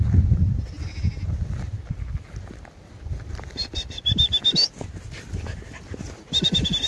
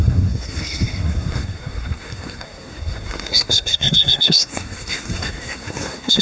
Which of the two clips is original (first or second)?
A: first